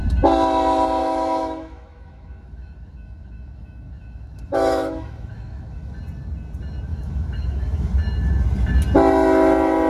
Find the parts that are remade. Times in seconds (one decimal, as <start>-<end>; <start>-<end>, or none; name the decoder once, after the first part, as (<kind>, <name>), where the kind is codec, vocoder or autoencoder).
1.0-5.9 (autoencoder, DAC-VAE); 6.9-7.9